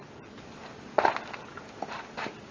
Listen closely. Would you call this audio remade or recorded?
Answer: recorded